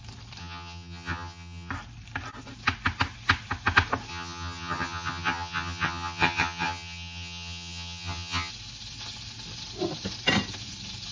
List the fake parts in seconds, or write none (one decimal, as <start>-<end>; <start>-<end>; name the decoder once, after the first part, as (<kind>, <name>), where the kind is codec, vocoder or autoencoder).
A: 0.4-1.7 (vocoder, HiFi-GAN); 4.1-8.5